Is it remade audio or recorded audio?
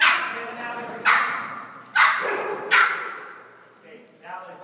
remade